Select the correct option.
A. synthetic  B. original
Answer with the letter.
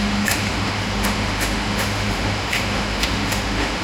A